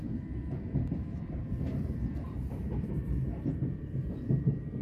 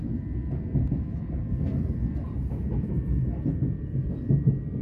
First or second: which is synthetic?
first